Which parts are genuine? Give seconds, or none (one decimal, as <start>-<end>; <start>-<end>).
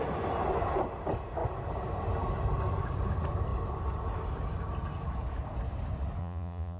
0.0-6.2